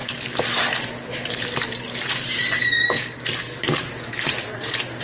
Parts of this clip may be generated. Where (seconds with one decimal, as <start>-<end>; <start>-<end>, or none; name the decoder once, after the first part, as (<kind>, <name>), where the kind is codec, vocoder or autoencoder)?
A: none

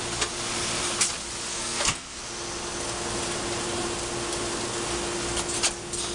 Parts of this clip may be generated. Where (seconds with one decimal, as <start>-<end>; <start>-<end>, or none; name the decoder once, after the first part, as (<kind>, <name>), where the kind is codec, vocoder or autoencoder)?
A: 1.5-2.2 (codec, SNAC)

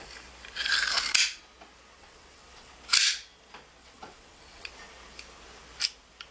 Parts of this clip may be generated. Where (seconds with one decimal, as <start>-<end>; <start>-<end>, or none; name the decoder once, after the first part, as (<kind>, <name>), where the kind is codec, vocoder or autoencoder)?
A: 2.0-2.7 (vocoder, WaveNeXt); 3.8-4.7

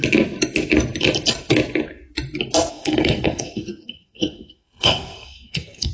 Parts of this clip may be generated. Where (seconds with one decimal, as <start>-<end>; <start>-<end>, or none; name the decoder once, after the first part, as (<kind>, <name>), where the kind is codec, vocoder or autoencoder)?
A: 2.7-5.9 (codec, SNAC)

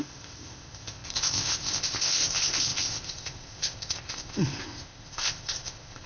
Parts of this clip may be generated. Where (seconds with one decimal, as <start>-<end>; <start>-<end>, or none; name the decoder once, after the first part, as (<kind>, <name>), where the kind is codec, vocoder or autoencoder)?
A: 0.0-6.1 (codec, ZipCodec)

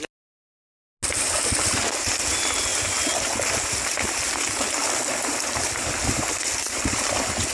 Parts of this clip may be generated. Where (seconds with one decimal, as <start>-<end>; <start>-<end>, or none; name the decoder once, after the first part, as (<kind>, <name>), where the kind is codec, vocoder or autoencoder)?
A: none